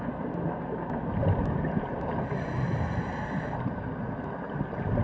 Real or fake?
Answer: real